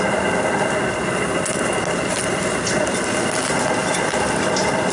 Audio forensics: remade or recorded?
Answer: recorded